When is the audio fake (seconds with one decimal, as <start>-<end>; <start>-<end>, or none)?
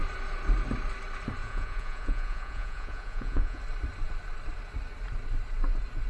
1.4-3.6